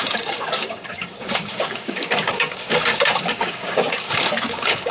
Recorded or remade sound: remade